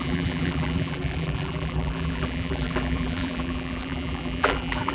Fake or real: fake